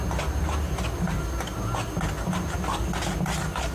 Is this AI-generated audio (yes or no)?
no